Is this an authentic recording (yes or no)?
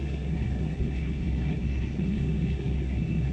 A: no